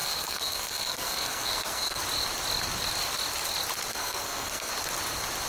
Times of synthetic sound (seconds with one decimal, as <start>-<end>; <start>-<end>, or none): 0.0-2.0; 3.9-4.7